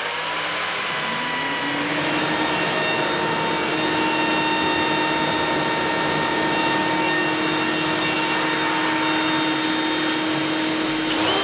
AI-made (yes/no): no